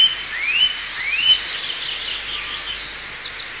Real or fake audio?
real